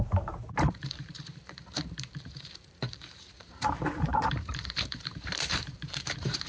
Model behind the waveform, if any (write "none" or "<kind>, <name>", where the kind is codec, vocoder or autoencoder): vocoder, BigVGAN v2